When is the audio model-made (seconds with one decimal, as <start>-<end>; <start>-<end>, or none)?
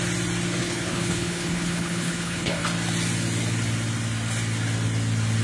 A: 0.6-2.6